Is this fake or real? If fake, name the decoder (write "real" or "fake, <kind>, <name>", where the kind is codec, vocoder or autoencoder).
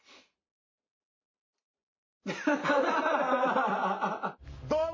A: real